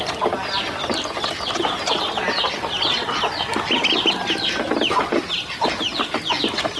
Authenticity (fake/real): real